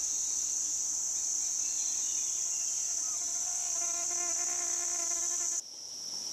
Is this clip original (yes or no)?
yes